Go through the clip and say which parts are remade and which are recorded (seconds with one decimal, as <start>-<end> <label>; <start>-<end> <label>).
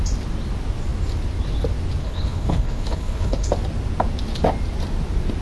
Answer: 0.0-2.0 recorded; 2.0-3.5 remade; 3.5-5.4 recorded